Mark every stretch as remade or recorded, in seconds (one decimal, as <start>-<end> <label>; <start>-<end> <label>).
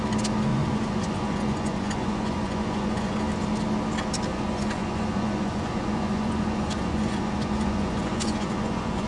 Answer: 0.0-0.5 recorded; 0.5-3.2 remade; 3.2-4.3 recorded; 4.3-9.1 remade